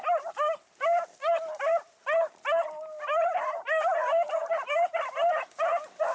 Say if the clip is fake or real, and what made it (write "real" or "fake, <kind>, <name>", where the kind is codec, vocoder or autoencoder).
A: fake, vocoder, BigVGAN v2